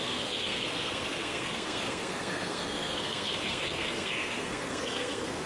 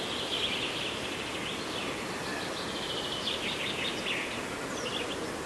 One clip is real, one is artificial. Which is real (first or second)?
second